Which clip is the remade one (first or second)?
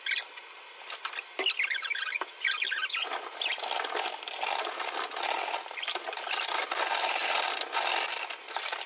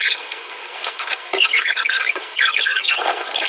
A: second